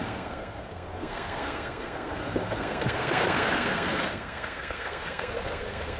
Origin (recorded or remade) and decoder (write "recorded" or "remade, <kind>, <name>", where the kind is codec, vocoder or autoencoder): remade, codec, SNAC